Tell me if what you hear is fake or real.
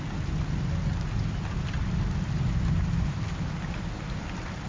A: real